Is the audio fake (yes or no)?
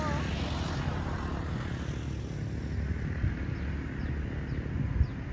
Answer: no